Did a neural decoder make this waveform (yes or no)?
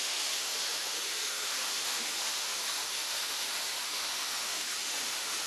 yes